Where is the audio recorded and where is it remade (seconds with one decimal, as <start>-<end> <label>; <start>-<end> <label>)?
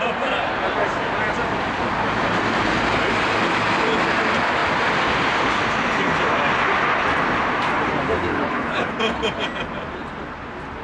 0.0-8.3 recorded; 8.3-8.9 remade; 8.9-10.8 recorded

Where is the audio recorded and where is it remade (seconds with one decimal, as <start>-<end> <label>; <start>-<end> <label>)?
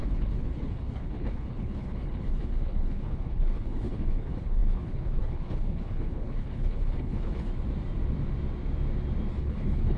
0.0-7.5 remade; 7.5-9.4 recorded; 9.4-10.0 remade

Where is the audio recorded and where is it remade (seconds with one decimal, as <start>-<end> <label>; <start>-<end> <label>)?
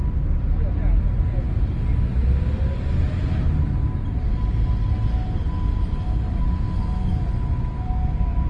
0.0-8.5 recorded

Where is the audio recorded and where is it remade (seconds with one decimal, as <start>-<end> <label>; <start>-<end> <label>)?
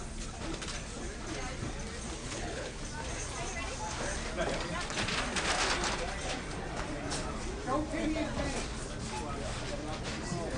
0.0-2.2 recorded; 2.2-2.8 remade; 2.8-10.6 recorded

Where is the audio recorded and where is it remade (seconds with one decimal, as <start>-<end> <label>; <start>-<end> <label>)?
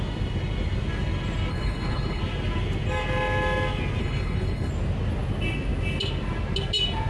0.0-1.5 recorded; 1.5-2.2 remade; 2.2-4.0 recorded; 4.0-4.7 remade; 4.7-7.1 recorded